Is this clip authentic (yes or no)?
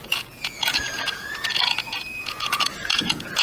no